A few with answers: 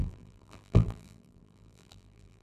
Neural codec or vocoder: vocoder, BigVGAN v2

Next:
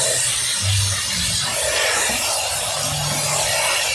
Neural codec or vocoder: none